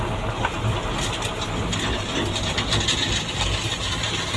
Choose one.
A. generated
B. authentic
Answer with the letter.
B